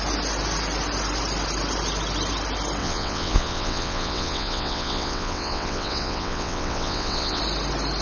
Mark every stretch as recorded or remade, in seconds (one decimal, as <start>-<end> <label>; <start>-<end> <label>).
0.0-2.8 recorded; 2.8-7.4 remade; 7.4-8.0 recorded